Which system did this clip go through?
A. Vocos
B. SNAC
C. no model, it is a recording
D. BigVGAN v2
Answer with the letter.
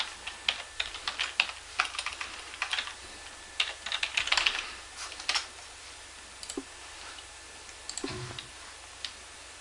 C